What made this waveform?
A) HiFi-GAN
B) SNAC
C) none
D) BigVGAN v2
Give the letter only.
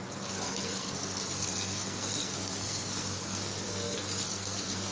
B